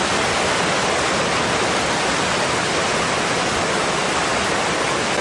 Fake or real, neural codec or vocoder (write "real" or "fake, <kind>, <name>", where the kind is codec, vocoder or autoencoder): real